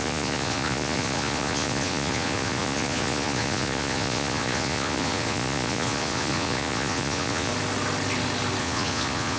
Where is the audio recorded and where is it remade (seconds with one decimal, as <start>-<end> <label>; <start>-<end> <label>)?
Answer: 0.0-7.5 remade; 7.5-8.6 recorded; 8.6-9.4 remade